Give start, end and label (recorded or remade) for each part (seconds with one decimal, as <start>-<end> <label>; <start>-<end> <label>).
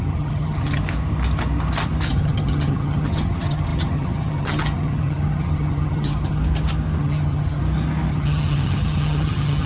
0.0-0.8 remade; 0.8-2.1 recorded; 2.1-6.4 remade; 6.4-7.0 recorded; 7.0-7.6 remade; 7.6-8.1 recorded; 8.1-9.7 remade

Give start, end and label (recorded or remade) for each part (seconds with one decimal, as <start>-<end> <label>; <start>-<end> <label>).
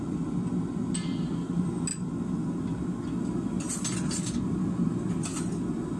0.0-6.0 recorded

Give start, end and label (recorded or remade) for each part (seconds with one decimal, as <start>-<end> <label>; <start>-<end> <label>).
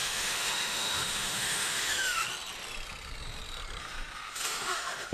0.0-2.2 remade; 2.2-3.8 recorded; 3.8-5.1 remade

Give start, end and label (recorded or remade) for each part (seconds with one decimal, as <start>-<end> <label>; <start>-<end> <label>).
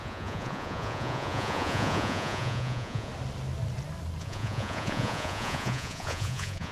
0.0-3.1 remade; 3.1-4.2 recorded; 4.2-6.7 remade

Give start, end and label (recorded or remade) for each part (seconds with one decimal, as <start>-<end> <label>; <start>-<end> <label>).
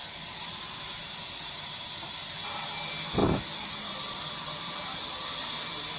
0.0-2.1 remade; 2.1-6.0 recorded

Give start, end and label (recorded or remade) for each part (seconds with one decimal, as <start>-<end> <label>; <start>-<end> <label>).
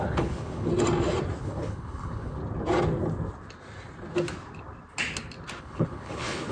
0.0-0.7 remade; 0.7-1.4 recorded; 1.4-2.4 remade; 2.4-5.6 recorded; 5.6-6.5 remade